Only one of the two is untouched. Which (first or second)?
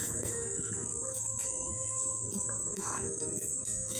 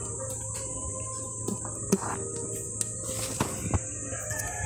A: second